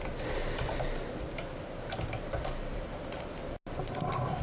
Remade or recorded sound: recorded